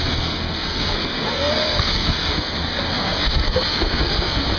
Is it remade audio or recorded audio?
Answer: remade